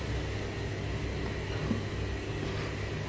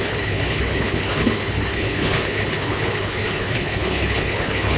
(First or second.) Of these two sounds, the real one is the first